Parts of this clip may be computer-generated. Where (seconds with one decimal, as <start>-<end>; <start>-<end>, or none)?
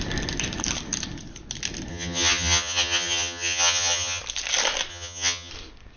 1.9-4.2; 4.9-5.5